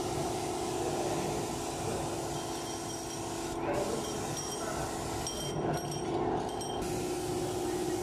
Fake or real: real